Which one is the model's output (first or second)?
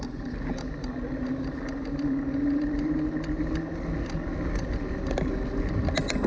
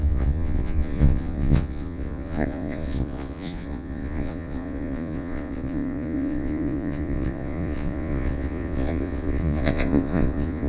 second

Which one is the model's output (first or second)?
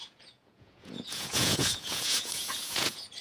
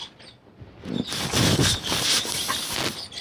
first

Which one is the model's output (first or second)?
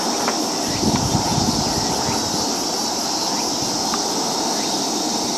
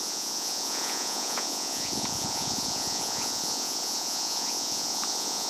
second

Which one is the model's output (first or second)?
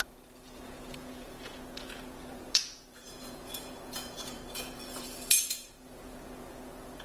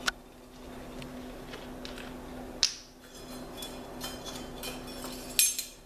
first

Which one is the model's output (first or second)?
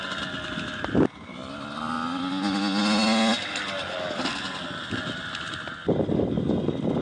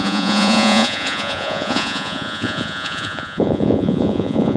second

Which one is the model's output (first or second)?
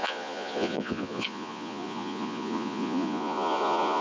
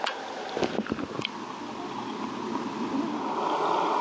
first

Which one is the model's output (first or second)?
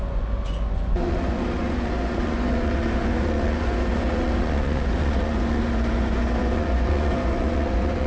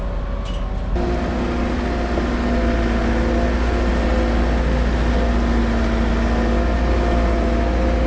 first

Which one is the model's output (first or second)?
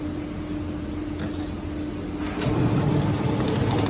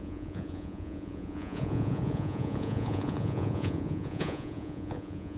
second